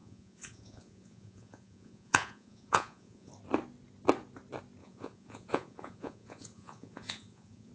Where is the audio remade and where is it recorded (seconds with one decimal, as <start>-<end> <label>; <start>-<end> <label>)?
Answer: 0.0-3.3 remade; 3.3-4.8 recorded; 4.8-7.7 remade